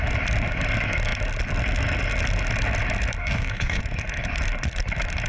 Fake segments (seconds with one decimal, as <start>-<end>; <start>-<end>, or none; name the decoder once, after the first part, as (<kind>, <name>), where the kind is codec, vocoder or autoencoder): 3.2-3.8 (codec, DAC)